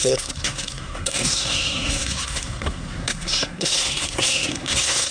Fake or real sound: fake